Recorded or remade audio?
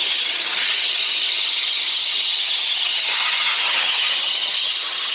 remade